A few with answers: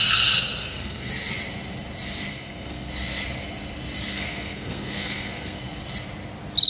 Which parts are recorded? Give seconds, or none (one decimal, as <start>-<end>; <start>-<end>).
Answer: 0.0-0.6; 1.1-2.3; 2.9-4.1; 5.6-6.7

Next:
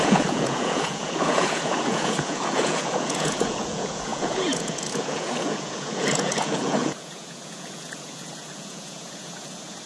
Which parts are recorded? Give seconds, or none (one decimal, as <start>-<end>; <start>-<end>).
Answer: none

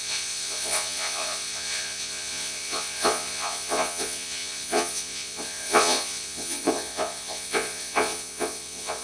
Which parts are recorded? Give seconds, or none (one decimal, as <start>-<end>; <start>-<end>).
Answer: none

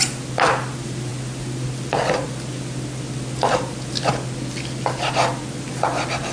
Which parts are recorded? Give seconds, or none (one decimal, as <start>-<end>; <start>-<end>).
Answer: 0.0-6.3

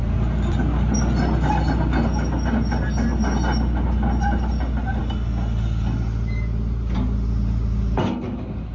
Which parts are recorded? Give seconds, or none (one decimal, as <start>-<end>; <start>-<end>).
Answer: 0.0-8.7

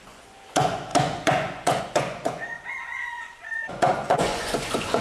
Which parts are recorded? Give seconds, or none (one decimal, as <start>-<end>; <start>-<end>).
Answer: none

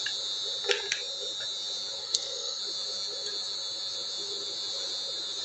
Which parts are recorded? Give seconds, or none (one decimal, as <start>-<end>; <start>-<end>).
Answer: 0.0-2.0; 2.6-5.4

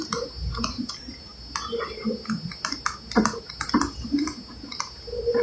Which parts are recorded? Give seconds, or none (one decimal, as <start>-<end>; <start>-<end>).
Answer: 0.0-5.4